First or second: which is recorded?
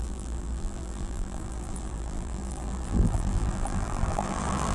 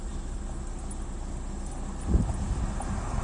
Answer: second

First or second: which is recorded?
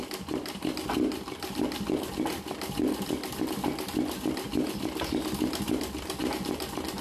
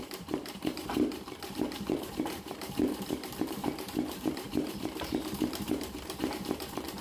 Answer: first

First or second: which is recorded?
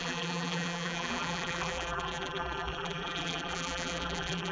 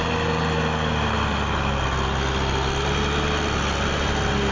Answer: second